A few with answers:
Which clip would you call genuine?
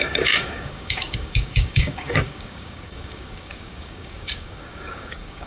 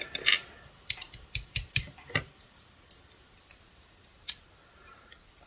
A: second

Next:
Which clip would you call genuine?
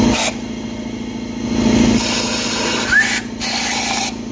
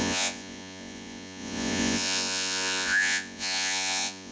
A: first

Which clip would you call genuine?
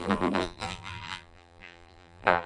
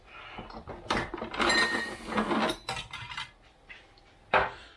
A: second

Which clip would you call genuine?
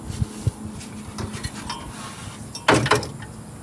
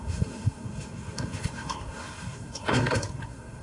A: first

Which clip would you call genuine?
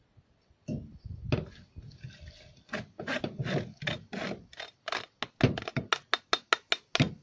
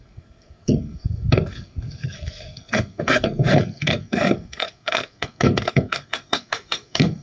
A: first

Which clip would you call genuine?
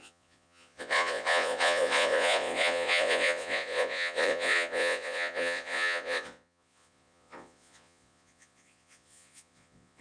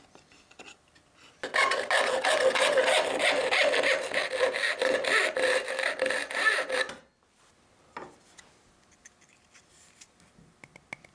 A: second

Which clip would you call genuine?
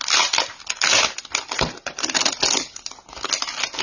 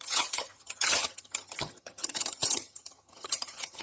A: first